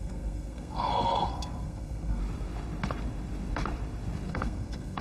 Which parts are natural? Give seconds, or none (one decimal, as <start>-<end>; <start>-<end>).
2.2-4.3